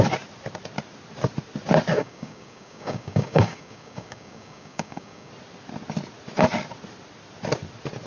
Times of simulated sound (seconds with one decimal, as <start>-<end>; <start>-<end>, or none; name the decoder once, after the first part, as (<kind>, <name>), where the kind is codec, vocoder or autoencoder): 1.9-5.3 (codec, DAC)